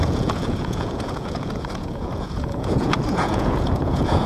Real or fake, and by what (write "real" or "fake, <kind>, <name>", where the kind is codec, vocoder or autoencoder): fake, vocoder, Vocos